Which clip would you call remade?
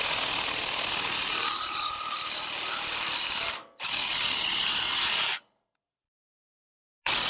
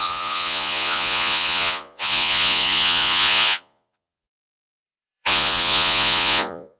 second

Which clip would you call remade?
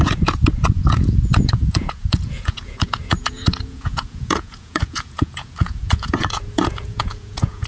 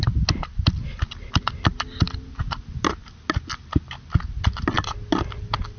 first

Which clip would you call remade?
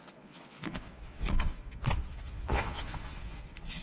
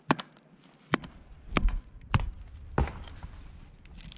first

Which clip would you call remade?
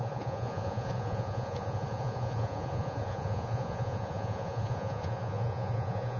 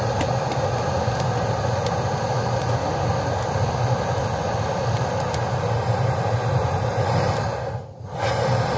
first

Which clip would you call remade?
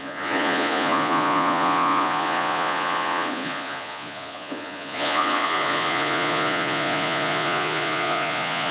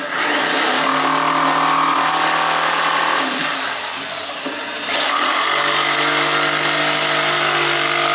first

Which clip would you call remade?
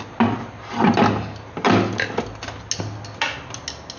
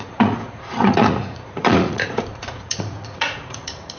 second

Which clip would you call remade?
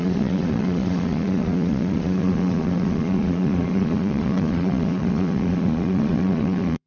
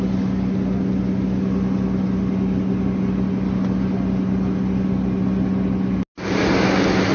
first